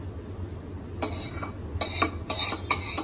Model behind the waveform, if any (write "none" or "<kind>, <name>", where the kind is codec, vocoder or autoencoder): none